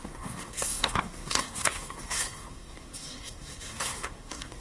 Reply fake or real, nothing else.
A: fake